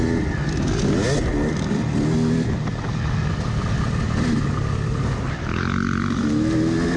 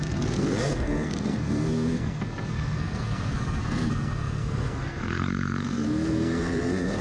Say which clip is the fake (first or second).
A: second